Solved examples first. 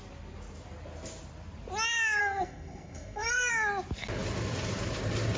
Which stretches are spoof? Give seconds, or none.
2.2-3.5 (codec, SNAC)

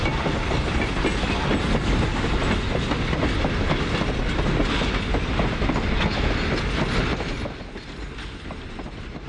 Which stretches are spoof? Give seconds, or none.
none

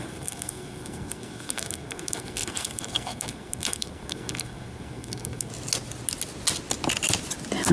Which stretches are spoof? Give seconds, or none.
0.0-5.5 (codec, SNAC)

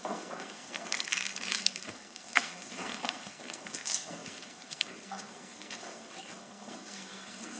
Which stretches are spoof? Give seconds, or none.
0.0-7.6 (codec, SNAC)